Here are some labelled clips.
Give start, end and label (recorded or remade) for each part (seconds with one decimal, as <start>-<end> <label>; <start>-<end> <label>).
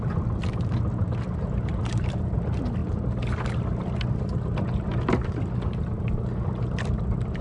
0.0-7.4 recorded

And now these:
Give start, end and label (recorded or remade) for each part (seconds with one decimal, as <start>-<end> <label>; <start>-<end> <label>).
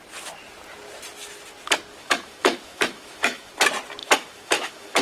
0.0-2.0 recorded; 2.0-3.5 remade; 3.5-4.0 recorded; 4.0-5.0 remade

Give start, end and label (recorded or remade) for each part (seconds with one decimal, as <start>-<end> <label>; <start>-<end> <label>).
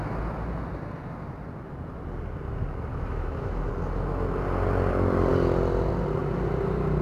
0.0-2.9 recorded; 2.9-3.7 remade; 3.7-7.0 recorded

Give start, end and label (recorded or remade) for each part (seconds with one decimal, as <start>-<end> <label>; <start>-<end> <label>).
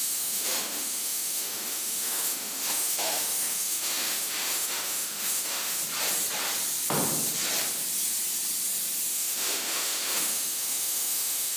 0.0-5.8 remade; 5.8-9.1 recorded; 9.1-11.6 remade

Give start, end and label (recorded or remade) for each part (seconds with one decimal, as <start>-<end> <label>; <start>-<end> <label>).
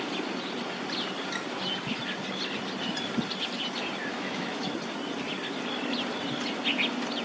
0.0-4.1 recorded; 4.1-4.7 remade; 4.7-7.2 recorded